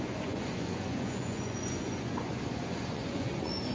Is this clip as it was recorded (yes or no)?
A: no